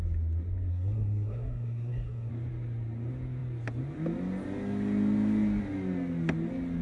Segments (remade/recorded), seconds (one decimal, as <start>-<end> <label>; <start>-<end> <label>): 0.0-0.7 recorded; 0.7-2.3 remade; 2.3-6.8 recorded